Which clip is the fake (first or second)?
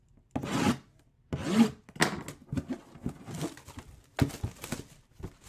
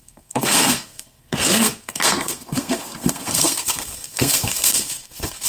second